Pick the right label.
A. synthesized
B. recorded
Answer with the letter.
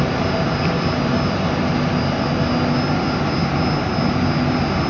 B